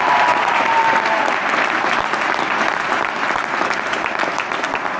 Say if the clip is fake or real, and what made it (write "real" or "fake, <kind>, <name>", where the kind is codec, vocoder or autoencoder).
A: real